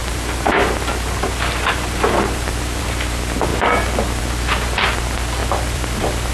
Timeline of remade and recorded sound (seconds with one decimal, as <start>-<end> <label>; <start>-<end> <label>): 0.0-3.5 recorded; 3.5-4.2 remade; 4.2-5.4 recorded; 5.4-6.3 remade